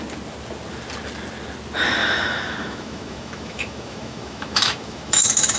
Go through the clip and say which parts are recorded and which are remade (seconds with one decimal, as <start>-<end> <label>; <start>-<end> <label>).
0.0-2.0 recorded; 2.0-5.6 remade